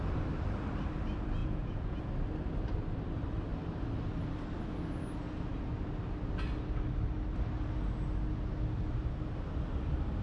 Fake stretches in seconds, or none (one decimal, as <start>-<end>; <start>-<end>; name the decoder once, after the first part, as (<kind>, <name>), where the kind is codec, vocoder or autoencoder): 1.4-2.0 (vocoder, Vocos)